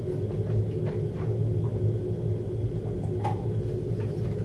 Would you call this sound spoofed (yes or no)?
no